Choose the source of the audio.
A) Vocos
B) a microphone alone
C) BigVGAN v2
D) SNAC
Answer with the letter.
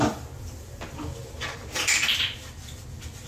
C